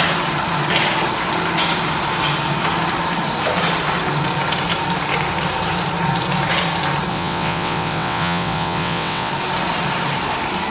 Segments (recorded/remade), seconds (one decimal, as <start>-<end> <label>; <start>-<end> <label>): 0.0-7.1 recorded; 7.1-9.3 remade; 9.3-10.7 recorded